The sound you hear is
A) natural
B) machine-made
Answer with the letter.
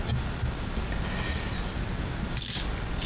A